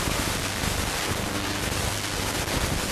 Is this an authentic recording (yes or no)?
yes